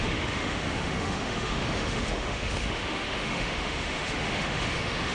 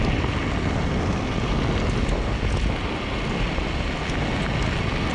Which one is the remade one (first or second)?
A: first